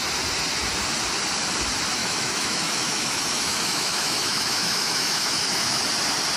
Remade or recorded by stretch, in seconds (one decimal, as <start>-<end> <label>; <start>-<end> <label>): 0.0-2.0 recorded; 2.0-5.8 remade; 5.8-6.4 recorded